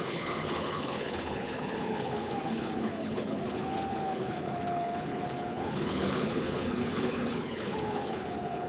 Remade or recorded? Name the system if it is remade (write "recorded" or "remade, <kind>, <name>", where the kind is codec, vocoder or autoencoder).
remade, codec, HILCodec